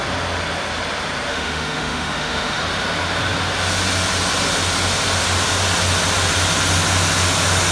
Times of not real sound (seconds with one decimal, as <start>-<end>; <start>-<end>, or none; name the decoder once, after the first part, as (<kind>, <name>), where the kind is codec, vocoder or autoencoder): 1.3-2.6 (autoencoder, DAC-VAE)